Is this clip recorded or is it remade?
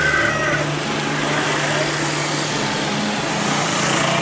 recorded